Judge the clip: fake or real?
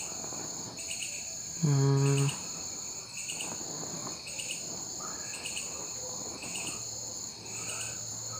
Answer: real